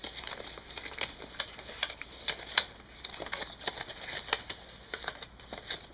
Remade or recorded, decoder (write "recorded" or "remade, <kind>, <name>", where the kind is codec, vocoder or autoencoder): recorded